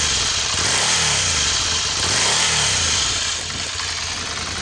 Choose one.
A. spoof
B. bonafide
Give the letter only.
B